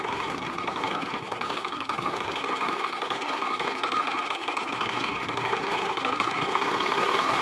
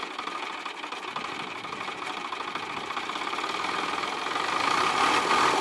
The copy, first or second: first